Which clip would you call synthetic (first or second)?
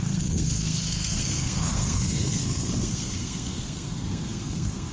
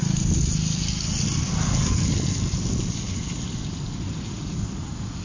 first